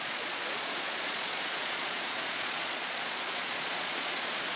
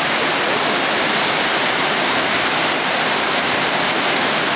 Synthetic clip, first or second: first